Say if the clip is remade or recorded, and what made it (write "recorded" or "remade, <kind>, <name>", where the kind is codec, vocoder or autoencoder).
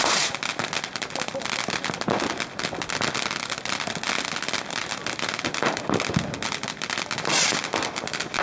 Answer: recorded